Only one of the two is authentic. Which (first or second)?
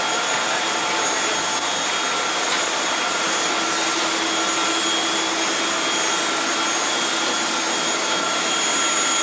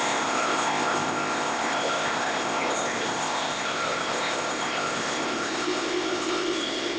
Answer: first